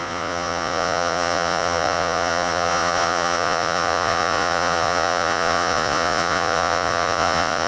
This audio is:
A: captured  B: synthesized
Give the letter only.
B